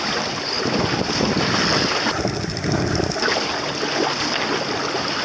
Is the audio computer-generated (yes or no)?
no